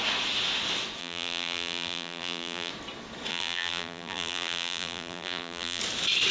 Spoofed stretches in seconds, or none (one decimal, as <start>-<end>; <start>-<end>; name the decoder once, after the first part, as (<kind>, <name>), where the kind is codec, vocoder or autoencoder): 1.0-2.7 (vocoder, BigVGAN v2); 3.3-5.8